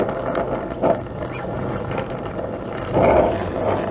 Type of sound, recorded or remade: remade